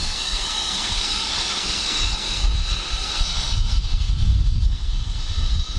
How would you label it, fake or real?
fake